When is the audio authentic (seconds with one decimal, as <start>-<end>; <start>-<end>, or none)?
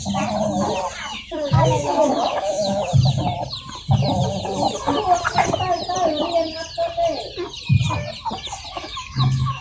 0.0-1.0; 2.8-8.7